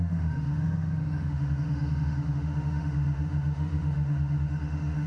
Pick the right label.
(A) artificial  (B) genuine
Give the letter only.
A